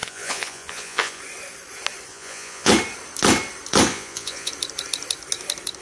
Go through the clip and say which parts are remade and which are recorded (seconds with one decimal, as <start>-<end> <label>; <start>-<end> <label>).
0.0-1.2 remade; 1.2-2.1 recorded; 2.1-2.7 remade; 2.7-3.9 recorded; 3.9-4.5 remade; 4.5-5.8 recorded